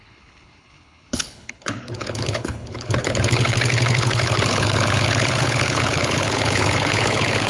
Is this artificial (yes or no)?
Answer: yes